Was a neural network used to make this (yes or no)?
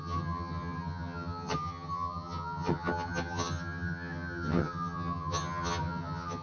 yes